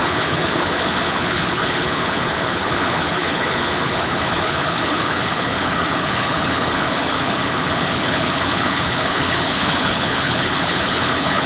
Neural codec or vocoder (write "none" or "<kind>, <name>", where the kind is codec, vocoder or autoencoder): codec, HILCodec